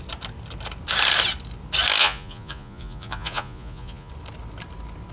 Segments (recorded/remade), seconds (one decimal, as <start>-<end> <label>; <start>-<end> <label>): 0.0-2.0 recorded; 2.0-4.1 remade; 4.1-5.1 recorded